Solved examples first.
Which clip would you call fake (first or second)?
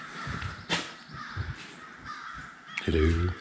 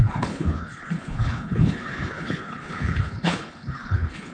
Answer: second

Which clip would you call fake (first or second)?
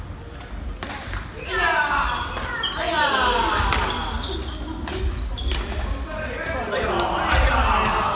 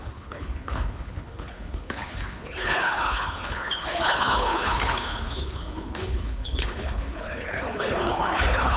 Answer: second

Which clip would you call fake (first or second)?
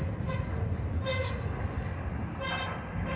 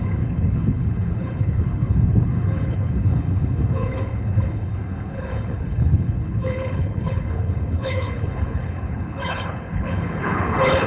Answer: second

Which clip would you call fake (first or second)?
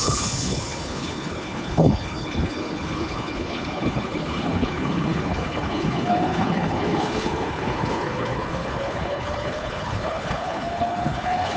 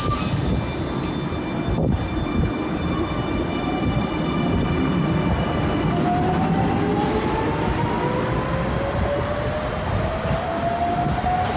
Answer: first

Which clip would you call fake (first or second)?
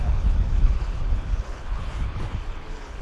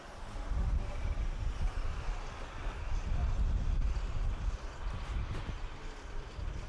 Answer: first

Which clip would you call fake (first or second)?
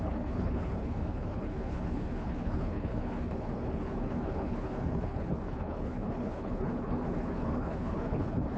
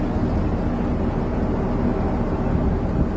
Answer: first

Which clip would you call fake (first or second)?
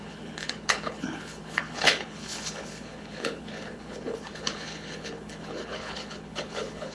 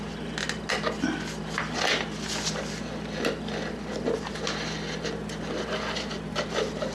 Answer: first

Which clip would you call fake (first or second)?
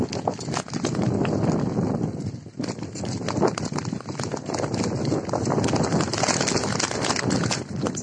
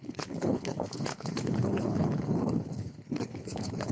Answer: second